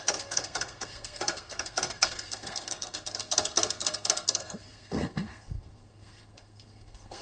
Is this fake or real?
fake